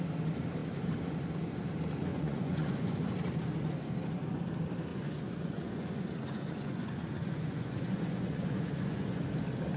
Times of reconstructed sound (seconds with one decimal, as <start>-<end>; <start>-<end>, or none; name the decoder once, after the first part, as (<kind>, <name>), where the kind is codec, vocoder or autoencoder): 2.1-3.1 (vocoder, Vocos); 4.9-9.2